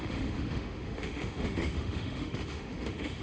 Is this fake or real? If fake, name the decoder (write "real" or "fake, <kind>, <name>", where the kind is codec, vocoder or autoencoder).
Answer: fake, autoencoder, DAC-VAE